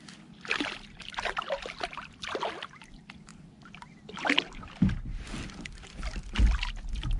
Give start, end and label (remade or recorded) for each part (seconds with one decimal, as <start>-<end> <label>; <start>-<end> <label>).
0.0-7.2 recorded